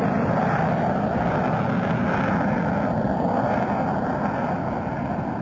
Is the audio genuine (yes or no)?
yes